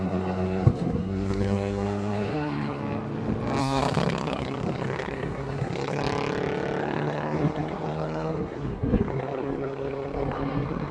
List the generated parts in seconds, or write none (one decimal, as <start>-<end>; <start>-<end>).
0.0-2.8; 3.6-6.0; 6.8-10.9